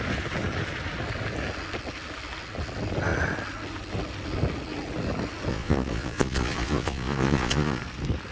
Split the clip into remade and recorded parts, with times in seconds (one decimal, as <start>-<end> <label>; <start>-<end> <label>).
0.0-5.5 recorded; 5.5-7.8 remade; 7.8-8.3 recorded